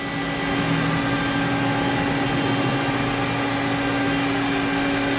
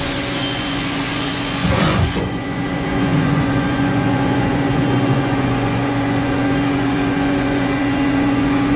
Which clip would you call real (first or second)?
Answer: first